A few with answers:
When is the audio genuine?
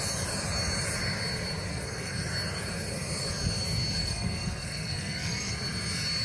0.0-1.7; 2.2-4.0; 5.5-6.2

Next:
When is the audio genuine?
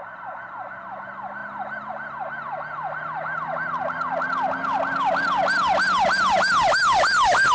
0.0-7.5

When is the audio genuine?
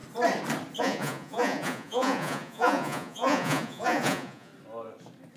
0.0-0.8; 4.5-5.4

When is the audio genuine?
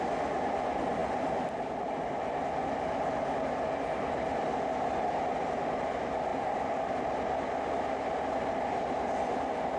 0.0-6.3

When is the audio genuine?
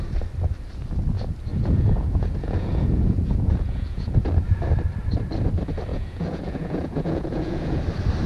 0.0-1.5; 4.3-5.9; 7.8-8.3